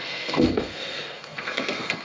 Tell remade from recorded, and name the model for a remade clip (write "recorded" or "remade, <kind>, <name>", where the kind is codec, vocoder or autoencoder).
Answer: remade, codec, SNAC